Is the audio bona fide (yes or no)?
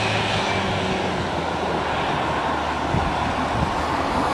yes